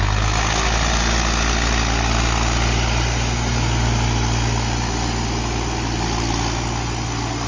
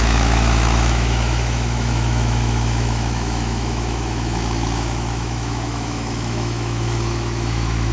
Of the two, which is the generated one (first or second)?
second